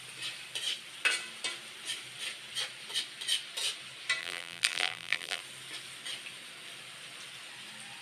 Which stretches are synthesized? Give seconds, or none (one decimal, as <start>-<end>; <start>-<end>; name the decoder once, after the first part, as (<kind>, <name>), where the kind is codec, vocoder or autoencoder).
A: 4.2-5.4 (vocoder, BigVGAN v2)